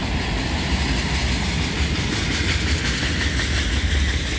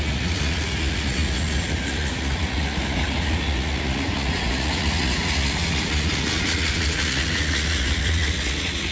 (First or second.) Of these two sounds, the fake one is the second